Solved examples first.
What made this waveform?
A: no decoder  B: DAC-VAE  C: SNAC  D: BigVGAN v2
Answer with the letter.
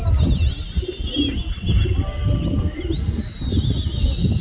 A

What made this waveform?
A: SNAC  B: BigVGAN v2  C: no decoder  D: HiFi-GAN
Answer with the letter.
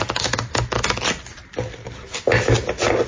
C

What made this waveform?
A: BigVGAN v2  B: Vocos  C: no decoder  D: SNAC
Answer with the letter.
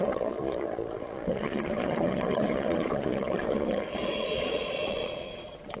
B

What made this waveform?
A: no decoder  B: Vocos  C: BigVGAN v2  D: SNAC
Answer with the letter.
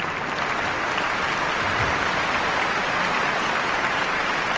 A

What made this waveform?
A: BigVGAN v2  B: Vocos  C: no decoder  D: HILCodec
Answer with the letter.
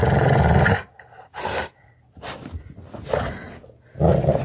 C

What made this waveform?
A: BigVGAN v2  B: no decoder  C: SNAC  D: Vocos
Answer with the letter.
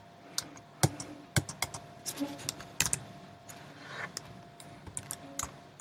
B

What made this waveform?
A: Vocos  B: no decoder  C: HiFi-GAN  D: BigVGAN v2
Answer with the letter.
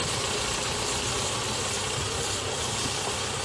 D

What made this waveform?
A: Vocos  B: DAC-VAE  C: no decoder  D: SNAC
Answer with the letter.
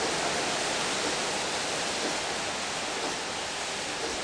C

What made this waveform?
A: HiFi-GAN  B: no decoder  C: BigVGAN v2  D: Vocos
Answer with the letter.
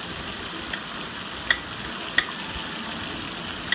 B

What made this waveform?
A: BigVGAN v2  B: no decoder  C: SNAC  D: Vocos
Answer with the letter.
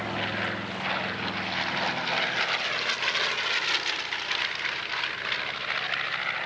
B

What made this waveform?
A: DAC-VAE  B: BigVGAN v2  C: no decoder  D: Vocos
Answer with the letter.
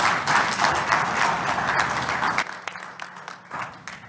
C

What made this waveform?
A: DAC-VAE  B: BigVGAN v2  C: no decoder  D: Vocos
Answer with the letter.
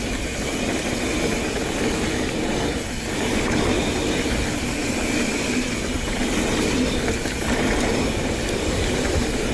C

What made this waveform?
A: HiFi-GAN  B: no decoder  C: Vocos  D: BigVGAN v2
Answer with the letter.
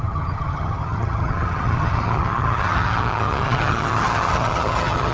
A